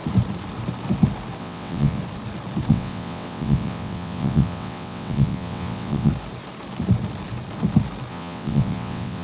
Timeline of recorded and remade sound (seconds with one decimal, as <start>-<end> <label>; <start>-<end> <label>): 0.0-1.4 recorded; 1.4-2.0 remade; 2.0-2.7 recorded; 2.7-6.1 remade; 6.1-8.1 recorded; 8.1-9.2 remade